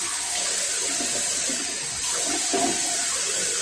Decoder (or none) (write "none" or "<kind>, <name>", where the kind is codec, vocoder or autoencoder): none